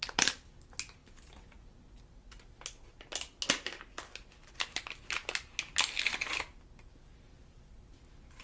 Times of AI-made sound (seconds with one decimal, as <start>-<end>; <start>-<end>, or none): none